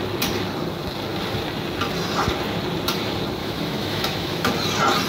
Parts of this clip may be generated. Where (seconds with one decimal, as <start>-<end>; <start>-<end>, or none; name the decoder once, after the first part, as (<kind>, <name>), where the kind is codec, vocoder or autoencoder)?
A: 3.4-4.5 (autoencoder, DAC-VAE)